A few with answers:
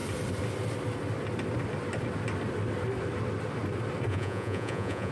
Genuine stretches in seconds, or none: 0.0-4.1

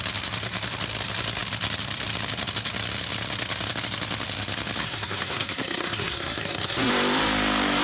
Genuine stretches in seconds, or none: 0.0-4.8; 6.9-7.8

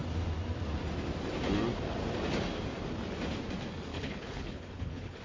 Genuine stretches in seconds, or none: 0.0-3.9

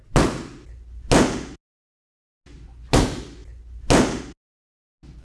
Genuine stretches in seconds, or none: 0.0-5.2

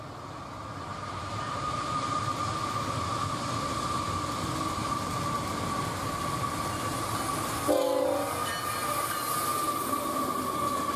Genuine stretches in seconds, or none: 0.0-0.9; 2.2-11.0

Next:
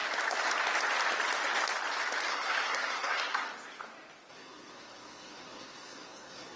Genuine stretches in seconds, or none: 0.0-2.3; 3.5-4.3